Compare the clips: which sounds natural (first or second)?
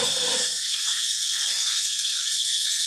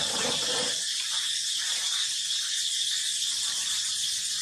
second